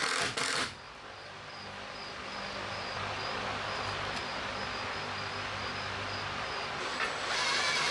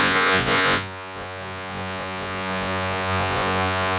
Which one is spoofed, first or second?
second